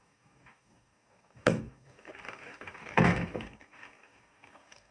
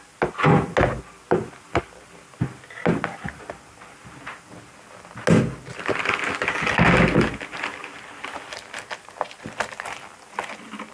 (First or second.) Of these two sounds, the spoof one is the first